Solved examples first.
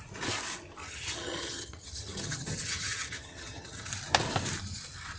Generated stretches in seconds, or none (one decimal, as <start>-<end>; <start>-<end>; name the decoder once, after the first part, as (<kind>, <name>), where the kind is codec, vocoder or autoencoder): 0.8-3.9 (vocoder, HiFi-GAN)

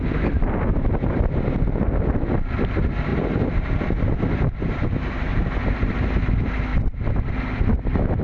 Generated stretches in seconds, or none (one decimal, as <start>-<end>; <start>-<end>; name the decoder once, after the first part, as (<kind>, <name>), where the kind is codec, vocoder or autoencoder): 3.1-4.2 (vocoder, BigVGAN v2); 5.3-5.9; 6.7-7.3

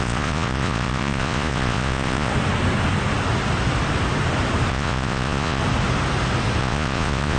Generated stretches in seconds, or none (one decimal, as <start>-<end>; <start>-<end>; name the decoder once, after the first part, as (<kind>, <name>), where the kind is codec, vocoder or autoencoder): 0.0-2.3 (vocoder, Vocos); 4.7-5.6; 6.6-7.4